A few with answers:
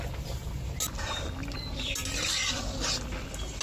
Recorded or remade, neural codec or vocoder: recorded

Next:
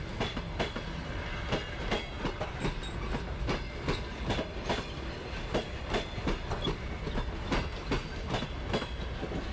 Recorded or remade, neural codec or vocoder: recorded